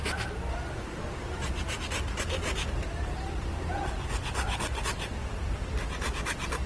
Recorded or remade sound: recorded